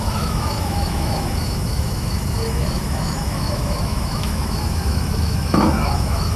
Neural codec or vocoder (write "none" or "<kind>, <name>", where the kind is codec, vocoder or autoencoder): autoencoder, DAC-VAE